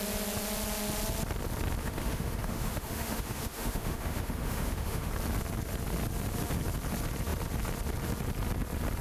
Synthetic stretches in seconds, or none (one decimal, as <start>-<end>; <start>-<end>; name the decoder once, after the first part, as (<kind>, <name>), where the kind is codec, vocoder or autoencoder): 1.8-5.1 (autoencoder, DAC-VAE)